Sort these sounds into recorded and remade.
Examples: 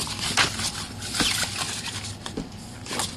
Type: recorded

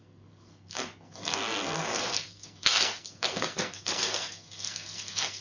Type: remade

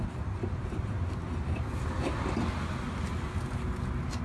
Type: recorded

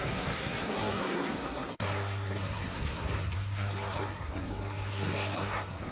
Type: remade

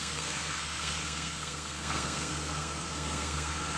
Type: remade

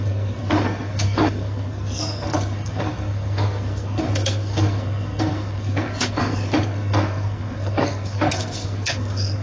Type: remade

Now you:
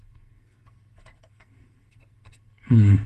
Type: remade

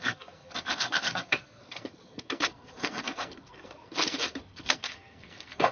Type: remade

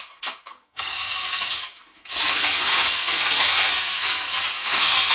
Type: remade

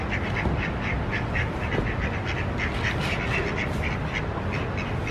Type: recorded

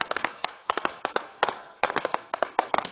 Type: remade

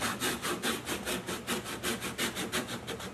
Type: recorded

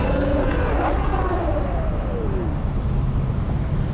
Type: recorded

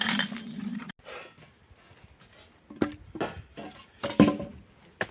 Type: recorded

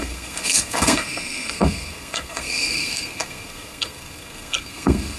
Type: remade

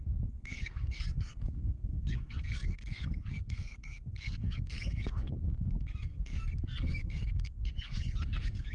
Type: remade